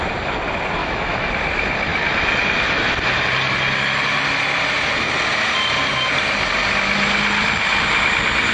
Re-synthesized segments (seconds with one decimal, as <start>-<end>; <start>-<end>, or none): 0.8-1.3